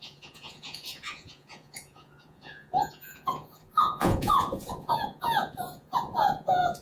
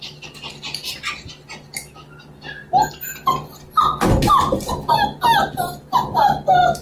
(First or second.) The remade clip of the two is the first